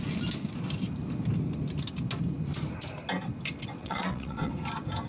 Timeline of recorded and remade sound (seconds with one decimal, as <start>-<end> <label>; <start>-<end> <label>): 0.0-3.8 recorded; 3.8-4.5 remade; 4.5-5.1 recorded